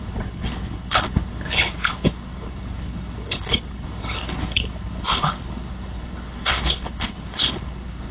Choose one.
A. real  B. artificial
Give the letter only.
B